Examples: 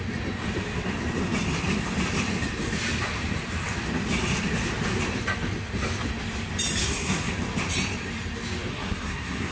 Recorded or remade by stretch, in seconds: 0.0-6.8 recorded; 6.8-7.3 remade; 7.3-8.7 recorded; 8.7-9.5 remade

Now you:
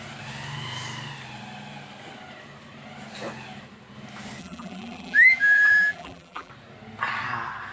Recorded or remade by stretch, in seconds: 0.0-4.4 recorded; 4.4-6.5 remade; 6.5-7.7 recorded

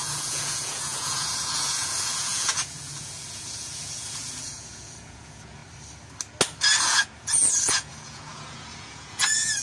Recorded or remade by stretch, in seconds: 0.0-5.6 remade; 5.6-6.8 recorded; 6.8-9.6 remade

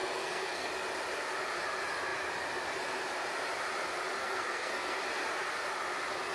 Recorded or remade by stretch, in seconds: 0.0-0.7 remade; 0.7-4.2 recorded; 4.2-5.0 remade; 5.0-6.3 recorded